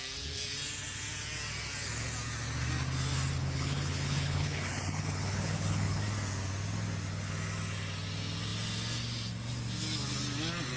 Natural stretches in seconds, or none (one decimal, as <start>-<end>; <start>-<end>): 0.0-3.4; 6.0-10.8